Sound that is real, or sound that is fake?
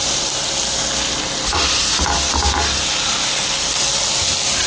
real